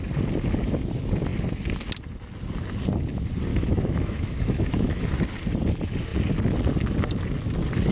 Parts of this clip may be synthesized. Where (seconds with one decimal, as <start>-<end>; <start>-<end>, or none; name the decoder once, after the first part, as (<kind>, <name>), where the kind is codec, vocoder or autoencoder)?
3.5-5.0 (autoencoder, DAC-VAE)